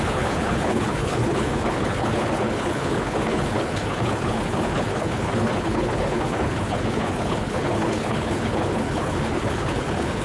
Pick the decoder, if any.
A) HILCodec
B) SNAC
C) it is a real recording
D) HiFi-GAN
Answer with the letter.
A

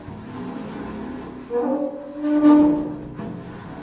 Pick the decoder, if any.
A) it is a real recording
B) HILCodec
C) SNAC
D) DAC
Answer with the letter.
A